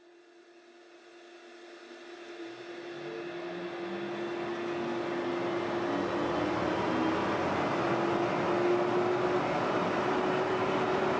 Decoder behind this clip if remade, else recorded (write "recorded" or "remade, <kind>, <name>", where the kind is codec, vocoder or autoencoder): recorded